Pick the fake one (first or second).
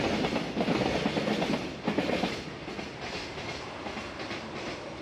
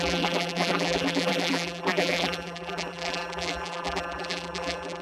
second